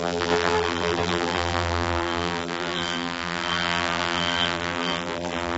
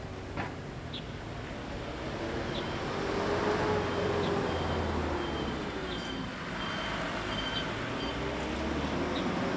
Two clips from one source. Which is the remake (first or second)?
first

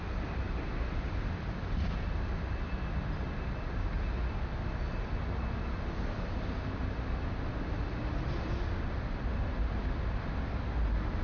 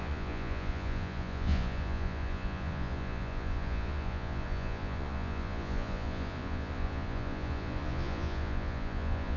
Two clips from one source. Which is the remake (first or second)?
second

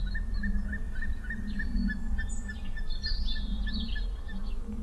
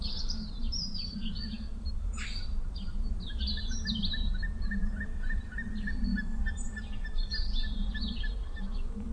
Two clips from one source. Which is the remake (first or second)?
second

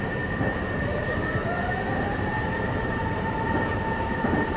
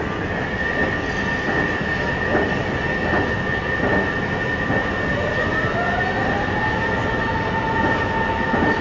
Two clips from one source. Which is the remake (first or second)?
first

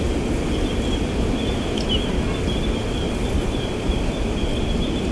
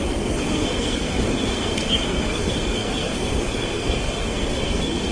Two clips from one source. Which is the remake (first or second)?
second